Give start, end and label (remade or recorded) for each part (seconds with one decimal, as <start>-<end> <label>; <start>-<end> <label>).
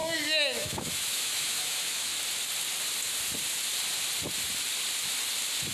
0.0-2.1 remade; 2.1-5.7 recorded